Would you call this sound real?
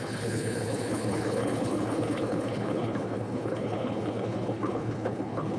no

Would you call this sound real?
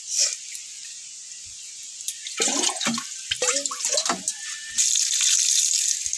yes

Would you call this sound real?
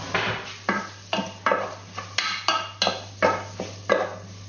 yes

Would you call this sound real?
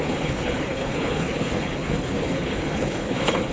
no